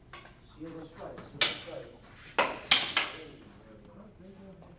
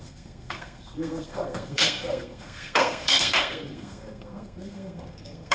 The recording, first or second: first